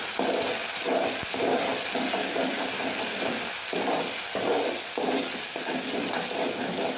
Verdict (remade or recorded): recorded